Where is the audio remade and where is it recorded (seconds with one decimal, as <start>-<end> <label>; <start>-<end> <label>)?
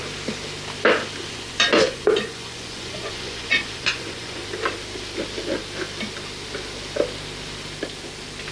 0.0-1.3 recorded; 1.3-4.4 remade; 4.4-8.5 recorded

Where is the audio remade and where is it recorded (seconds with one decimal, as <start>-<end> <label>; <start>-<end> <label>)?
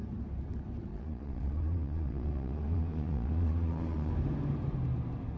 0.0-0.9 recorded; 0.9-4.1 remade; 4.1-5.4 recorded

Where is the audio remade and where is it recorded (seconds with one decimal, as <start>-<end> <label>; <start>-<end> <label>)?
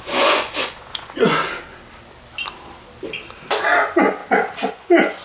0.0-1.4 remade; 1.4-3.6 recorded; 3.6-4.2 remade; 4.2-4.7 recorded; 4.7-5.2 remade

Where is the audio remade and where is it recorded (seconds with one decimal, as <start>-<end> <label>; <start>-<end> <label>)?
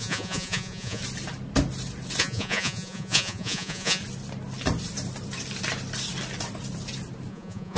0.0-1.0 remade; 1.0-2.2 recorded; 2.2-4.0 remade; 4.0-7.3 recorded; 7.3-7.8 remade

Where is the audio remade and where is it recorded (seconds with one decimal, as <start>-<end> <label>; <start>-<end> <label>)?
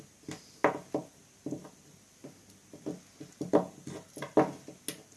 0.0-5.2 recorded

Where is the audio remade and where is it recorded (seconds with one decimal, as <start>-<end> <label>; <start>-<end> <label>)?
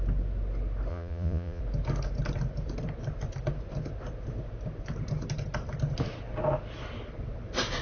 0.0-0.9 recorded; 0.9-1.6 remade; 1.6-7.8 recorded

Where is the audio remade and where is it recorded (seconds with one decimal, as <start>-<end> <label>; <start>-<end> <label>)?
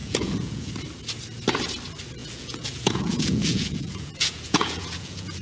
0.0-0.7 remade; 0.7-2.2 recorded; 2.2-5.4 remade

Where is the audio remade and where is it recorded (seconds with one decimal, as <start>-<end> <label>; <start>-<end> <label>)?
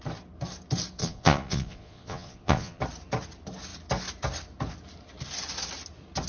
0.0-1.0 recorded; 1.0-2.8 remade; 2.8-6.3 recorded